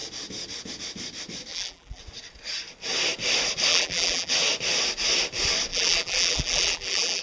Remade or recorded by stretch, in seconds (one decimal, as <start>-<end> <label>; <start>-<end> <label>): 0.0-1.5 recorded; 1.5-2.0 remade; 2.0-3.7 recorded; 3.7-4.3 remade; 4.3-5.7 recorded; 5.7-7.2 remade